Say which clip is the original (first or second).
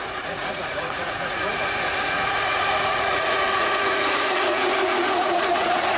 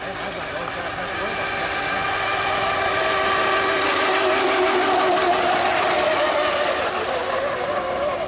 second